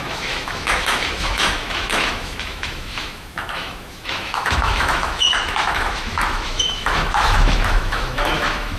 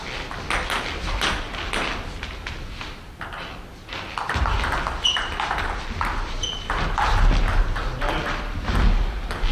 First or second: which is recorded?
second